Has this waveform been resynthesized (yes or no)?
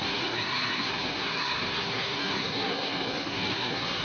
yes